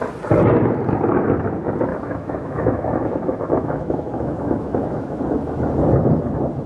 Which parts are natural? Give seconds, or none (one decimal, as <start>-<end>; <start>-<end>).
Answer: 0.0-1.9; 5.2-6.7